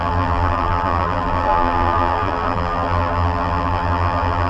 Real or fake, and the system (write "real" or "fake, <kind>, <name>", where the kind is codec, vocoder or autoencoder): fake, vocoder, BigVGAN v2